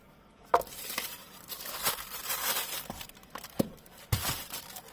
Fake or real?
fake